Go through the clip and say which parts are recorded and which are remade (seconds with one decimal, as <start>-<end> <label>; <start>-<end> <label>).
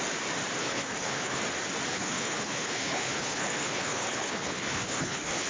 0.0-0.6 recorded; 0.6-1.4 remade; 1.4-1.9 recorded; 1.9-5.5 remade